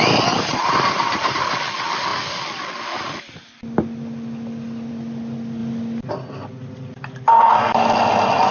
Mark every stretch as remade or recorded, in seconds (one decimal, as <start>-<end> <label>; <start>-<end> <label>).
0.0-0.5 recorded; 0.5-1.4 remade; 1.4-8.5 recorded